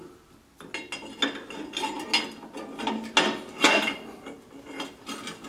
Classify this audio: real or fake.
real